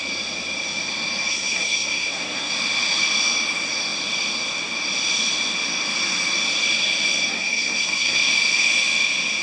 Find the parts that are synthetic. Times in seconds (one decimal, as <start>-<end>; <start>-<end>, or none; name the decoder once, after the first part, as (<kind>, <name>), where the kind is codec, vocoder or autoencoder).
1.3-2.5 (codec, SNAC); 7.3-8.2